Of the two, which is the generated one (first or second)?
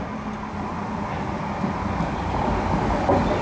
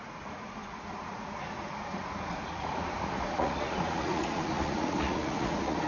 second